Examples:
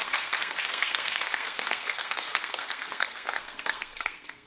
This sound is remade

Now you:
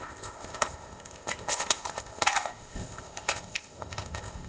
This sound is remade